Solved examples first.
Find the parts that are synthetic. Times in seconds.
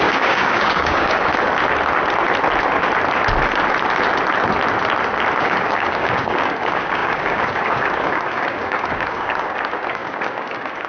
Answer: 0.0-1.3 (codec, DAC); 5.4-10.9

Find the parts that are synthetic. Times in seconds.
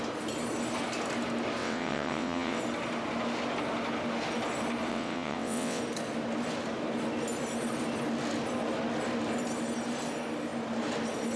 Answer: 1.6-2.6 (vocoder, WaveNeXt); 4.9-5.8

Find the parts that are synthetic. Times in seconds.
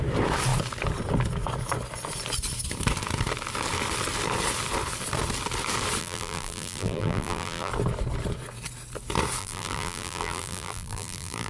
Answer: 6.0-7.7 (vocoder, BigVGAN v2); 9.4-11.5